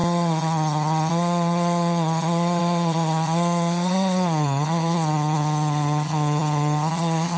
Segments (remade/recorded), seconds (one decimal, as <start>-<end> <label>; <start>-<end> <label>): 0.0-7.4 remade